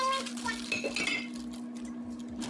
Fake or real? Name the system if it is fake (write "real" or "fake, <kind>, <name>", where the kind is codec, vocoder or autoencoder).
real